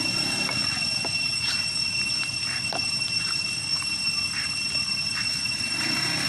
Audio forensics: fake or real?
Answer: real